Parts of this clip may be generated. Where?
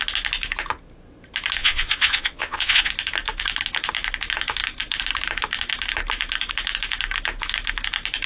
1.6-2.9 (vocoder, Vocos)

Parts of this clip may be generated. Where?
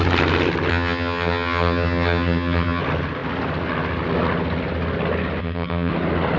0.7-2.8 (vocoder, HiFi-GAN); 5.4-5.9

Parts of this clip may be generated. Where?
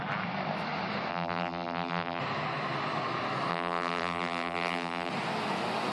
1.1-2.2 (vocoder, BigVGAN v2); 3.5-5.1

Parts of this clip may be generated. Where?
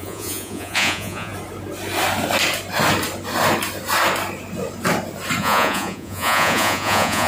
0.0-1.3 (vocoder, Vocos); 5.4-7.3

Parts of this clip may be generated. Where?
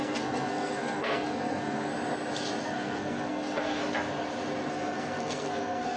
0.0-1.9 (codec, SNAC); 2.6-3.8; 4.7-6.0